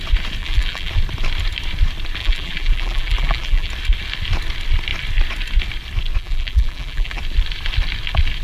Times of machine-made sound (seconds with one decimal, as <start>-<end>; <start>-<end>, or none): 0.4-0.9; 2.2-3.7; 6.2-7.2